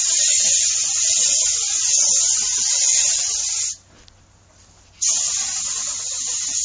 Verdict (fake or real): real